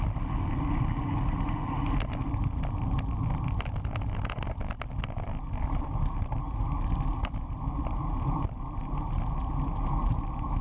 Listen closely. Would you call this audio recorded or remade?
recorded